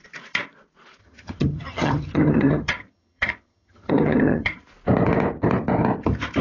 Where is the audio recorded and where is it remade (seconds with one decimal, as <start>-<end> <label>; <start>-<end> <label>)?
0.0-1.0 recorded; 1.0-4.6 remade; 4.6-6.4 recorded